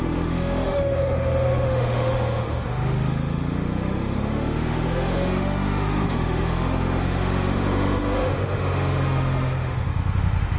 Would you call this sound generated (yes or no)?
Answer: yes